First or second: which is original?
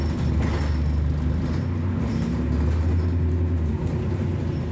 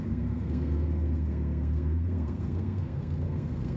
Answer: first